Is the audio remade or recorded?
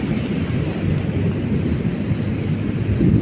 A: recorded